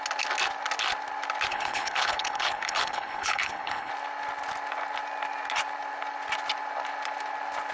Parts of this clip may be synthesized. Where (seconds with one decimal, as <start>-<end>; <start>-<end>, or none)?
1.5-3.9